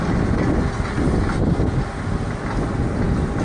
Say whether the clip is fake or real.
real